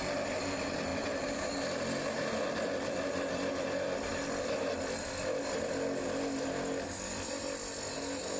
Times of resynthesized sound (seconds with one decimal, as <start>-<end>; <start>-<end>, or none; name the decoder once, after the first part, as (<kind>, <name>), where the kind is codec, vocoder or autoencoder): none